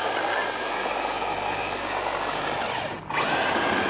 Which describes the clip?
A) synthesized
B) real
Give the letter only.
B